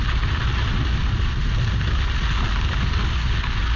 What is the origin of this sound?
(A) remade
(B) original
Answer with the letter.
B